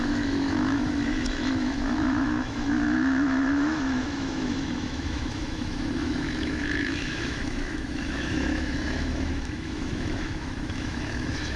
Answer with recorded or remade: remade